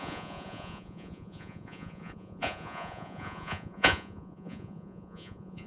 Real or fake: fake